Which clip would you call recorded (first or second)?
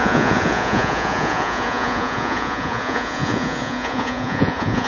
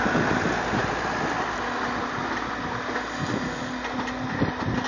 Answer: second